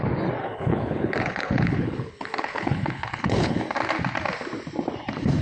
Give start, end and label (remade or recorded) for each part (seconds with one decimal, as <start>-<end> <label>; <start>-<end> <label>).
0.0-0.4 recorded; 0.4-3.6 remade; 3.6-5.4 recorded